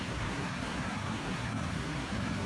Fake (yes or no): yes